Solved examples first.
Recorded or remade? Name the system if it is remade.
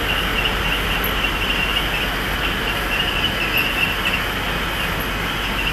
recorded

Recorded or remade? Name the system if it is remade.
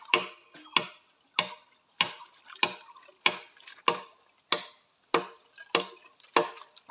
recorded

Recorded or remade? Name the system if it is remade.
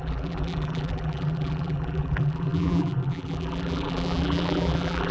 remade, vocoder, BigVGAN v2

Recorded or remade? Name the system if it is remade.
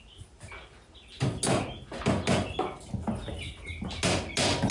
recorded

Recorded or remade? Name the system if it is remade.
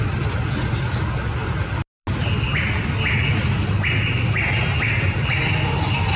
recorded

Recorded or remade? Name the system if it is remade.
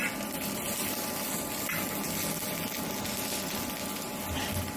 recorded